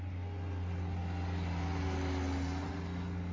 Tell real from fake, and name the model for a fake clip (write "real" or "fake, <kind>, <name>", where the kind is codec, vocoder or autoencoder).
real